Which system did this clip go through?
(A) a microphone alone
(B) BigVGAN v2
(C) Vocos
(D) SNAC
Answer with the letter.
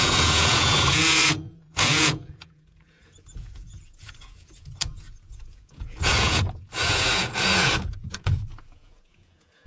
C